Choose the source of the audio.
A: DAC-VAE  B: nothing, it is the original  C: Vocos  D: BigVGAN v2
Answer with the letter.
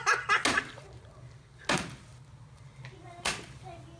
B